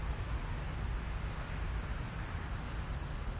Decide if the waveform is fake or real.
real